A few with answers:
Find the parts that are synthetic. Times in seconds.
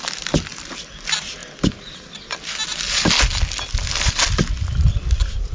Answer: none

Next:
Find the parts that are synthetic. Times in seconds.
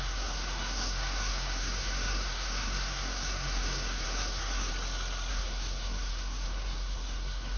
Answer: 0.0-4.7; 5.3-7.6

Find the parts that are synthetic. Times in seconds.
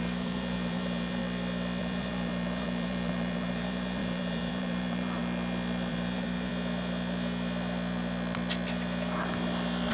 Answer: 0.0-1.2; 1.8-5.2; 5.9-6.5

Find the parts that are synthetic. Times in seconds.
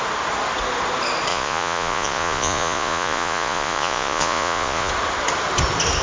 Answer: 1.3-4.9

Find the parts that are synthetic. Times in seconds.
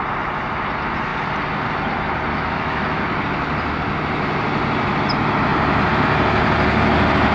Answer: 2.3-3.0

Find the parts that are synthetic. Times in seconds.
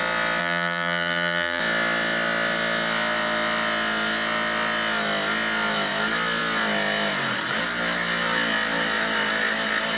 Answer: 0.4-1.6